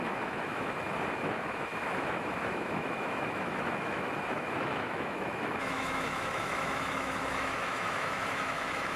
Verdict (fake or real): fake